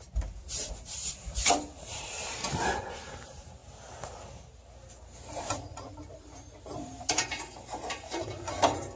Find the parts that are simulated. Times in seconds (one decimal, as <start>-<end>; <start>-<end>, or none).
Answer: 0.0-2.4; 3.0-3.6; 5.4-9.0